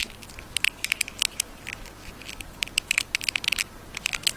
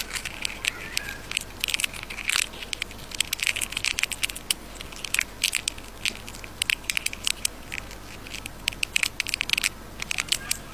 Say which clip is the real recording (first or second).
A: second